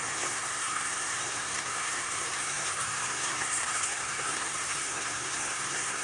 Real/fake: fake